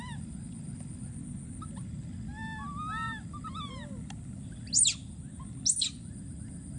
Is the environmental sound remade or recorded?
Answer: recorded